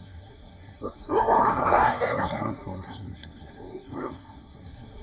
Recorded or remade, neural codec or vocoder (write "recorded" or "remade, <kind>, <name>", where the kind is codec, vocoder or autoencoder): remade, codec, SNAC